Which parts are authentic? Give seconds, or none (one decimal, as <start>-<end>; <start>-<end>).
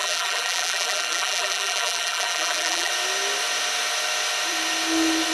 2.9-5.3